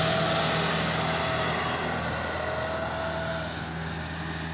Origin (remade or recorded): recorded